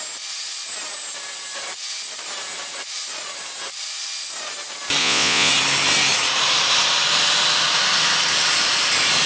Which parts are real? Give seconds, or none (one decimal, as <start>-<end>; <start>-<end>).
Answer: 0.0-5.0; 5.5-9.3